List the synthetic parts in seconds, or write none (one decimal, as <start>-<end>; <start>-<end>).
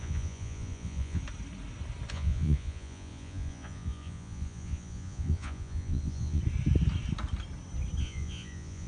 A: 0.0-1.2; 2.1-6.4; 8.0-8.9